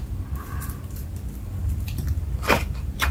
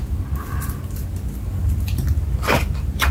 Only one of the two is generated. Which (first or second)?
first